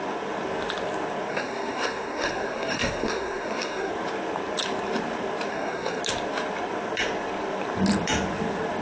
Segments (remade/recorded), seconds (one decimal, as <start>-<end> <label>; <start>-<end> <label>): 0.0-1.3 recorded; 1.3-3.9 remade; 3.9-5.5 recorded; 5.5-6.0 remade; 6.0-8.8 recorded